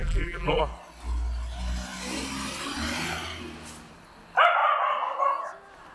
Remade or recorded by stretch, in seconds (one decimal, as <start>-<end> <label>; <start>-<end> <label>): 0.0-0.6 remade; 0.6-5.9 recorded